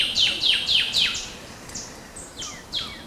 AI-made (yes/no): no